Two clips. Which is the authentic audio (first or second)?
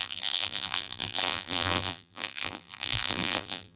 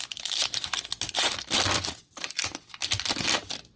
second